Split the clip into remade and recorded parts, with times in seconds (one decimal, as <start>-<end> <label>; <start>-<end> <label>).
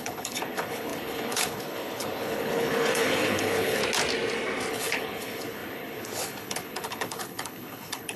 0.0-3.8 remade; 3.8-4.7 recorded; 4.7-8.2 remade